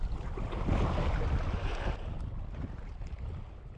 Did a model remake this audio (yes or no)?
no